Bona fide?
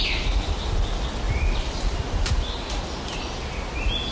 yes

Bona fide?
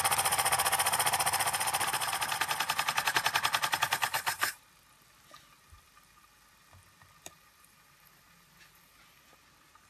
yes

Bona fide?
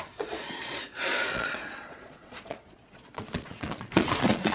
no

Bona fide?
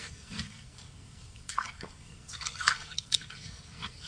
no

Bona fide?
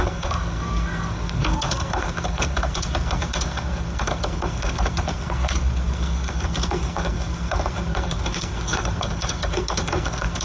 no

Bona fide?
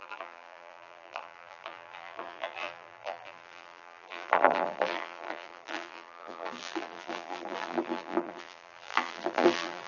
no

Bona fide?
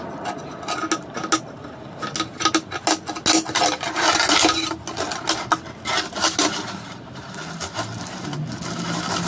yes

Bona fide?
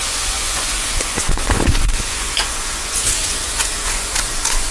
no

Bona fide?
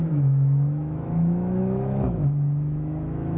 no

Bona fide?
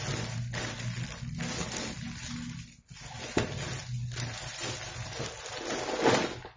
yes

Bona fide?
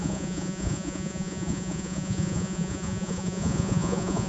no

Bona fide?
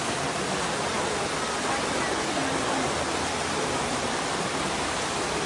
yes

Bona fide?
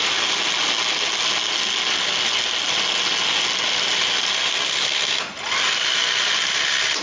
yes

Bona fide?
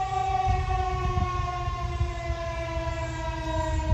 yes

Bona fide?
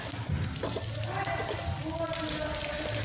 yes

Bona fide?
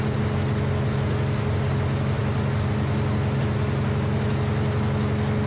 yes